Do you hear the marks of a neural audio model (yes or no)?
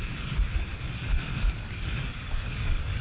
yes